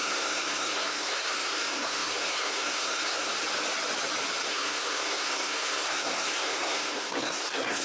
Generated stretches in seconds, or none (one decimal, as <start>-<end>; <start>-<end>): 0.0-3.3; 4.5-7.8